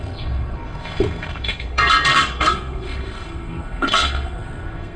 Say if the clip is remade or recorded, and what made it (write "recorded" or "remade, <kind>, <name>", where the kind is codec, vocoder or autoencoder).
remade, codec, SNAC